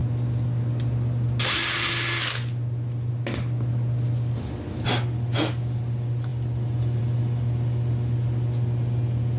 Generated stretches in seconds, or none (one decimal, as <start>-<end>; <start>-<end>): none